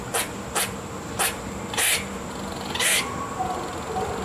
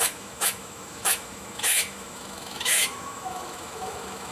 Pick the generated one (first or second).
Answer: second